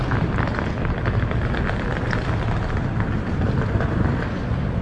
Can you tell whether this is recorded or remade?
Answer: recorded